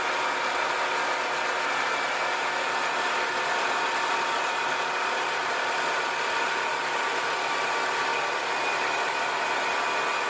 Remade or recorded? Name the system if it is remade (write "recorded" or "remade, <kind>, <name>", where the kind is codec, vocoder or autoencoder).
recorded